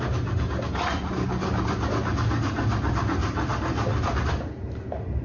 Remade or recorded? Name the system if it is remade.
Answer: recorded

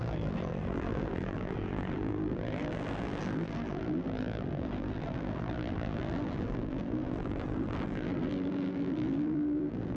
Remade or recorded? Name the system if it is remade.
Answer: remade, vocoder, BigVGAN v2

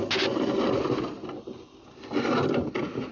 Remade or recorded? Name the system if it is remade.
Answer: recorded